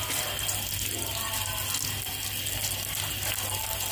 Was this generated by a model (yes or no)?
no